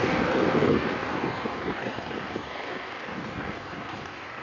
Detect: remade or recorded remade